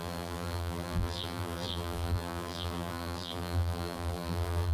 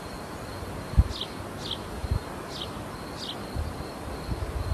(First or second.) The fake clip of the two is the first